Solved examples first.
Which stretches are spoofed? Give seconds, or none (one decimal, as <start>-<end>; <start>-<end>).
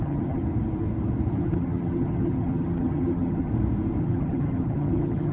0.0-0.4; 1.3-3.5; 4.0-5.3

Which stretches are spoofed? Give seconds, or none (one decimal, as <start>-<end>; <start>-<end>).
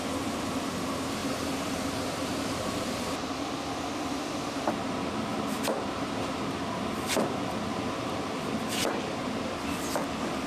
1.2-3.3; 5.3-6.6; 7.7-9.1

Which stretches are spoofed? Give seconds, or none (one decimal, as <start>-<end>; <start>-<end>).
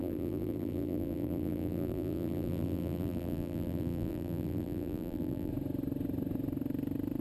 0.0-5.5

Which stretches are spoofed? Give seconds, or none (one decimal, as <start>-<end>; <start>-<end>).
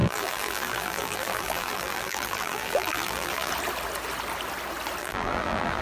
0.0-3.5; 5.0-5.8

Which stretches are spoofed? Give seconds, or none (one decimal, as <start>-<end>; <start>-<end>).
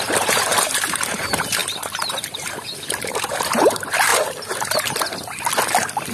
0.0-4.1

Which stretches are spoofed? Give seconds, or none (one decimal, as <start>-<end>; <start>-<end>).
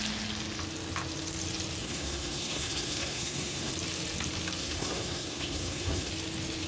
1.8-3.7; 4.6-6.1